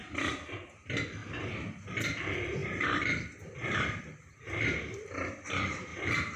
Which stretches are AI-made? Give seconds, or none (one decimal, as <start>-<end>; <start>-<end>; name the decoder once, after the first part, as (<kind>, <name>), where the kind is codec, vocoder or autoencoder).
0.0-1.2 (vocoder, BigVGAN v2); 1.8-6.4